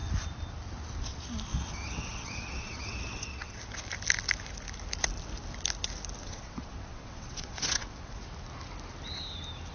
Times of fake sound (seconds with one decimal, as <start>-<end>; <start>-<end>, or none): 1.5-3.6; 6.2-8.2